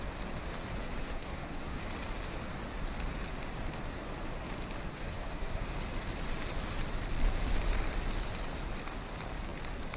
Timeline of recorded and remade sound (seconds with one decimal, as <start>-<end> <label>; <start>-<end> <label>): 0.0-1.0 recorded; 1.0-1.8 remade; 1.8-4.9 recorded; 4.9-5.6 remade; 5.6-10.0 recorded